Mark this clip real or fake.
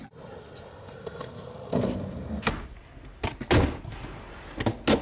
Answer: real